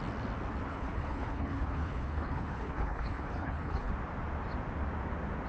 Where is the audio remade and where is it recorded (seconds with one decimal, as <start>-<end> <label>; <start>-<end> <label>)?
0.0-0.7 recorded; 0.7-3.9 remade; 3.9-5.5 recorded